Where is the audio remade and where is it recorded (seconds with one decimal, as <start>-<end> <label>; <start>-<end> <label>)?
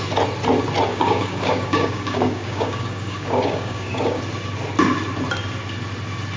0.0-0.9 recorded; 0.9-4.2 remade; 4.2-6.4 recorded